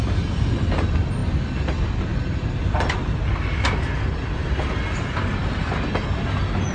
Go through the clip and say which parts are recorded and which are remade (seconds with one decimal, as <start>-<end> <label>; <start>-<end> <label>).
0.0-6.7 recorded